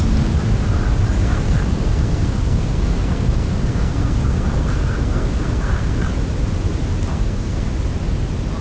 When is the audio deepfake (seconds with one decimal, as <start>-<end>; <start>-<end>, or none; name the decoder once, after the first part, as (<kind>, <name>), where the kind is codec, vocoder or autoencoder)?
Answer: 1.2-6.2 (codec, SNAC); 7.1-7.7